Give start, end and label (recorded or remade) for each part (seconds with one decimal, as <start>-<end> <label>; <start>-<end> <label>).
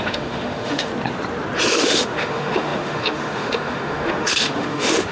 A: 0.0-0.9 remade; 0.9-1.7 recorded; 1.7-5.1 remade